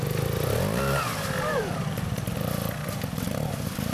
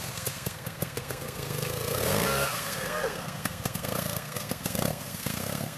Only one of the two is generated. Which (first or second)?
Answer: second